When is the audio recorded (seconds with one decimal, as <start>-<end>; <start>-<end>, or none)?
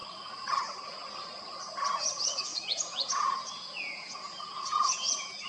0.0-0.6; 1.0-1.6